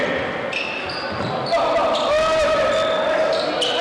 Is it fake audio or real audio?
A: real